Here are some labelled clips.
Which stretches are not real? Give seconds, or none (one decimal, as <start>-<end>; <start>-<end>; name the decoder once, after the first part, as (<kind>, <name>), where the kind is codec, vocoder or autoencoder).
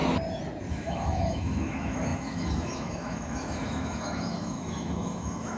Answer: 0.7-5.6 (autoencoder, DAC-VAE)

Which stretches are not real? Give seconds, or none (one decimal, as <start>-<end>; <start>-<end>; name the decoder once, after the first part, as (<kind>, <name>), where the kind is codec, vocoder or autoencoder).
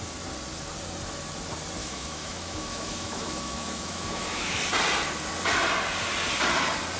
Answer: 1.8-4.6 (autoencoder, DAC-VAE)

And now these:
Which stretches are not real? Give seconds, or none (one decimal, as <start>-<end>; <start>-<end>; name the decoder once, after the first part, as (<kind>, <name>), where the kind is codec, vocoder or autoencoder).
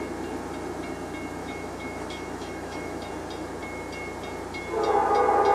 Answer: 1.4-3.1 (autoencoder, DAC-VAE)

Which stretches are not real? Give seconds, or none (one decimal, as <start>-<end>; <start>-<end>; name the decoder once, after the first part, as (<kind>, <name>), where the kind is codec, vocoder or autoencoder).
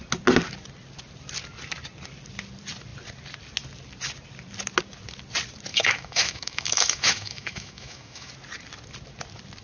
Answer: 5.7-8.3 (autoencoder, DAC-VAE)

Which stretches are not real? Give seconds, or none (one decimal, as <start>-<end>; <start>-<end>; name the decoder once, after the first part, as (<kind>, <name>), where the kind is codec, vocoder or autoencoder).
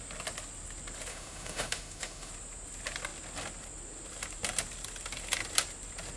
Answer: 1.1-2.3 (autoencoder, DAC-VAE)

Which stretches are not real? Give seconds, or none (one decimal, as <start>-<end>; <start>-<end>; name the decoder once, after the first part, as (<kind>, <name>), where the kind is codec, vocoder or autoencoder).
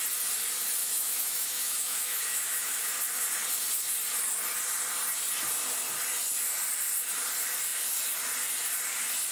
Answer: 0.8-2.9 (autoencoder, DAC-VAE)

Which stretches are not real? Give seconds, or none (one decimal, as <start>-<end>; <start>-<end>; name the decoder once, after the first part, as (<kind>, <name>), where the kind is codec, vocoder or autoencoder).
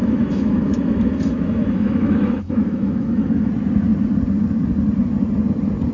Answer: 0.0-3.5 (autoencoder, DAC-VAE)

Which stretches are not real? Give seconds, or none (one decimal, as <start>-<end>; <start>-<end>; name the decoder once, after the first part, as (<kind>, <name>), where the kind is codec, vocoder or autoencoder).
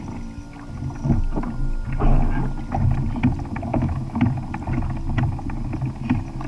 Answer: 3.7-4.2 (autoencoder, DAC-VAE)